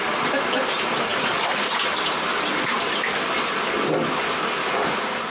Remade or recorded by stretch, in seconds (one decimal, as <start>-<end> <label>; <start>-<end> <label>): 0.0-5.3 recorded